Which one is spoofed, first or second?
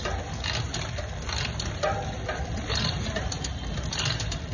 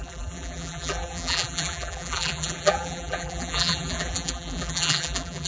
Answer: second